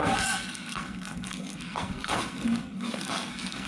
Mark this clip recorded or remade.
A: remade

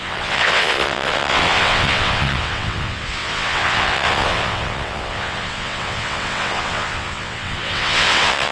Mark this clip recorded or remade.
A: remade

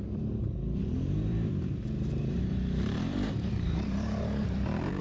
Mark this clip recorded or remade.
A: remade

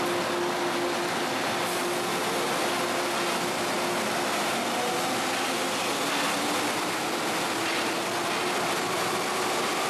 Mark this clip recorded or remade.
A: recorded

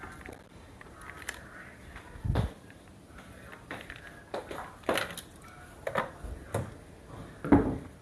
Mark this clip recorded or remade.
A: recorded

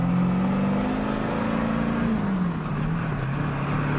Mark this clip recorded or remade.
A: recorded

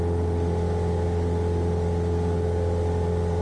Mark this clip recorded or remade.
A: recorded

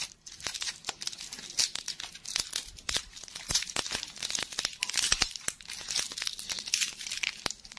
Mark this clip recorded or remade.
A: remade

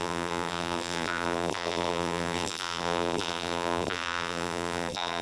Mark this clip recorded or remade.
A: remade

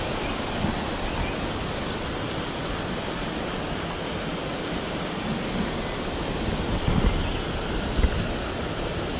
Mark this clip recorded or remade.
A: recorded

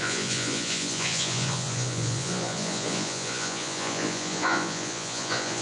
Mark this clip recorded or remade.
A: remade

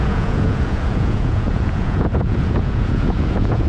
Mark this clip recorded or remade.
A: remade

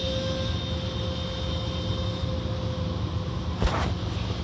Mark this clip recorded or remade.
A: recorded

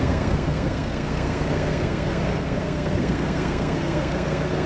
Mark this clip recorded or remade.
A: remade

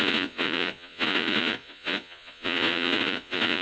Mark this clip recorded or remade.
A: remade